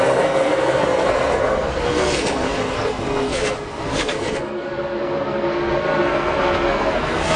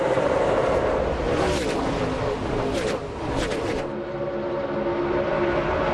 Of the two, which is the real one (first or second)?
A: second